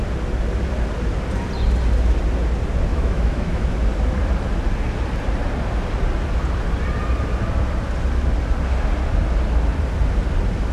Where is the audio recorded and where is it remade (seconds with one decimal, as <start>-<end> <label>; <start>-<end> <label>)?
0.0-2.9 recorded; 2.9-3.7 remade; 3.7-10.7 recorded